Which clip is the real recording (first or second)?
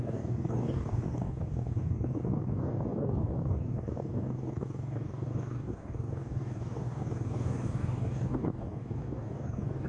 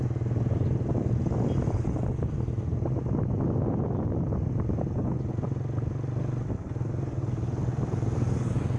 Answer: second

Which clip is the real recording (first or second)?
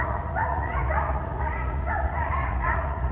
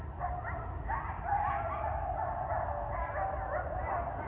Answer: second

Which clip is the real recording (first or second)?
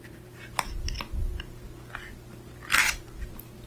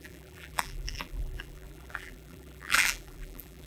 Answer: first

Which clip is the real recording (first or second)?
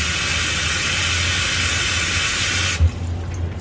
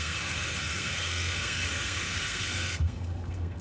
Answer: first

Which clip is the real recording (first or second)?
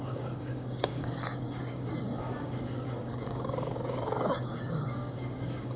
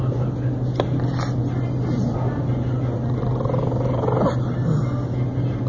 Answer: second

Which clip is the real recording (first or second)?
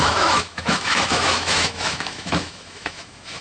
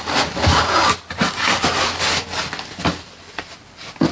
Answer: second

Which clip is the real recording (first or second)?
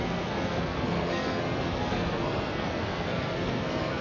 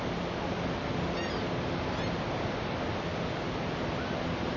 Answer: second